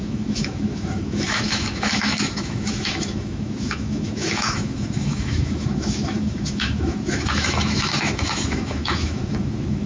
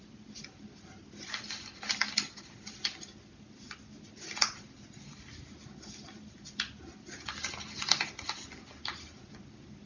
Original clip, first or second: second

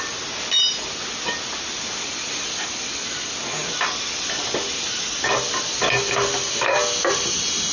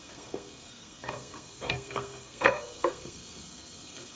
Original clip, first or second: first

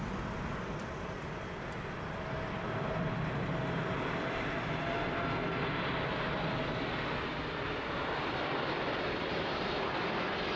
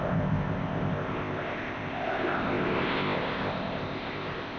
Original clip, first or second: first